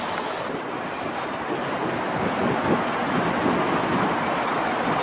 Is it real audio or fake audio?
real